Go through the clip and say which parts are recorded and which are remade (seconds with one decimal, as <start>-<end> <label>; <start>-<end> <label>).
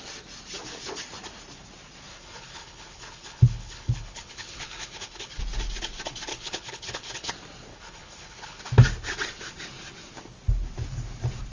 0.0-2.1 recorded; 2.1-5.4 remade; 5.4-6.3 recorded; 6.3-7.3 remade; 7.3-7.7 recorded; 7.7-8.6 remade; 8.6-11.5 recorded